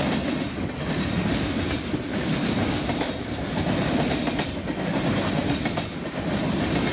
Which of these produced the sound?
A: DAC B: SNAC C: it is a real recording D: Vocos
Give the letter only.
C